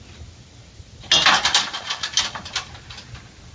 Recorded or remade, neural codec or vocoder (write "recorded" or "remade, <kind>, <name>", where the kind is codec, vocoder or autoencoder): recorded